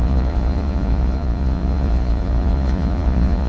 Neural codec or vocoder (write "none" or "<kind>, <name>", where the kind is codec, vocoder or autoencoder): vocoder, Vocos